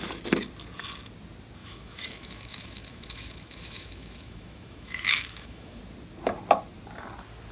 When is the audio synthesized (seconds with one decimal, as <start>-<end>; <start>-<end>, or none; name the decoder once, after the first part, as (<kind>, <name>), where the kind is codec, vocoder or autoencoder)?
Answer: 1.6-5.8 (autoencoder, DAC-VAE)